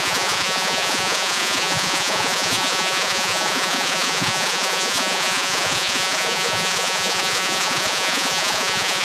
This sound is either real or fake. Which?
fake